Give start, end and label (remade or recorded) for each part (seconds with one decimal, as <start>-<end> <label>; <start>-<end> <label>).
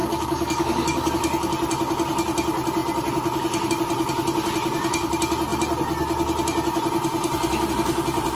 0.0-1.1 remade; 1.1-8.3 recorded